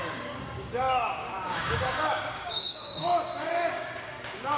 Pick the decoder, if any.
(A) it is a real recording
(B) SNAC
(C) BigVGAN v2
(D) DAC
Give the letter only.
D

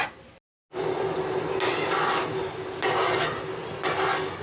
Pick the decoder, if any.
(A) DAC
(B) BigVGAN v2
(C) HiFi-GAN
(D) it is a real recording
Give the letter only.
D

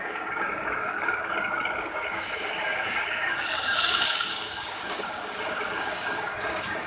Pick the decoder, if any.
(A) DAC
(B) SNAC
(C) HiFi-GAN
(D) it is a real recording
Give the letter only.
A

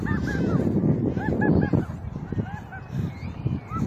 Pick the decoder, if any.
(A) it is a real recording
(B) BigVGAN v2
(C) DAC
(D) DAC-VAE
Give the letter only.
A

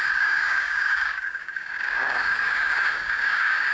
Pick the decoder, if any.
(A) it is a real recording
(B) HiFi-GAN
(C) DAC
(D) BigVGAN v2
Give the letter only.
C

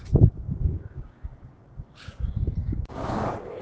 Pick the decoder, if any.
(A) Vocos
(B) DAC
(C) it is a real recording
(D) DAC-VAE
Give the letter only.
B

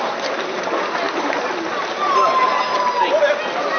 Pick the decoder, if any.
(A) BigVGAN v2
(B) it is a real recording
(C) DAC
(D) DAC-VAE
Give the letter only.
B